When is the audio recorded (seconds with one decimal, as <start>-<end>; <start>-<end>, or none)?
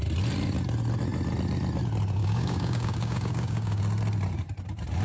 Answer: 0.0-2.2; 3.8-5.0